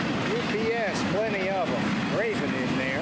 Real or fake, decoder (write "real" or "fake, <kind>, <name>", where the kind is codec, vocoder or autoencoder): real